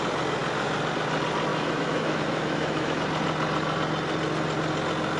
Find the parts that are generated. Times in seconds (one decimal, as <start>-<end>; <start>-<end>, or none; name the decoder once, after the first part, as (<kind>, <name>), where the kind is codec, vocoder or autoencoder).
1.5-3.0 (autoencoder, DAC-VAE)